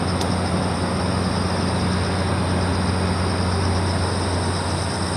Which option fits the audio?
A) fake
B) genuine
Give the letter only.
B